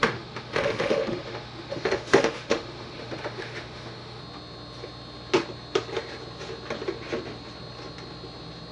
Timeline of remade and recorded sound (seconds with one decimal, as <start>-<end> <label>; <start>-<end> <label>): 0.0-4.2 remade; 4.2-8.7 recorded